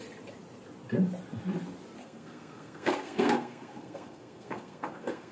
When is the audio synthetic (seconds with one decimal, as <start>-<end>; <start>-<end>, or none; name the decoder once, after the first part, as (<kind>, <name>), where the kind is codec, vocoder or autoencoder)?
2.0-5.3 (codec, SNAC)